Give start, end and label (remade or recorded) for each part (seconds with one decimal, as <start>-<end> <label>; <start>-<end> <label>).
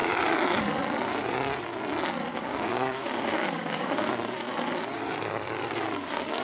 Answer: 0.0-2.3 recorded; 2.3-4.1 remade; 4.1-6.4 recorded